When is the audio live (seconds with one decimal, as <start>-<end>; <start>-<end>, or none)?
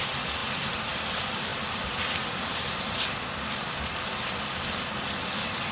0.0-5.7